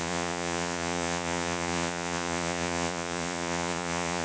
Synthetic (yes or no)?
yes